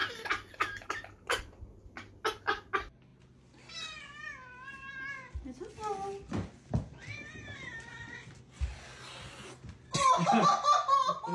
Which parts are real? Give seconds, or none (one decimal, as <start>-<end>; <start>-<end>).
0.0-11.3